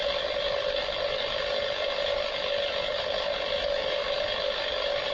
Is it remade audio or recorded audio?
recorded